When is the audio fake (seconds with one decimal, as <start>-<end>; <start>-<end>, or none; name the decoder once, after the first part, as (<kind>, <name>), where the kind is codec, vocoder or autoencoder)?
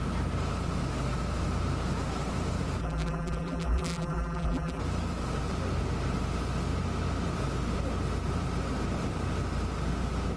2.8-4.8 (vocoder, BigVGAN v2)